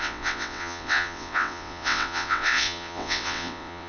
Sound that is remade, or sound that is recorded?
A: remade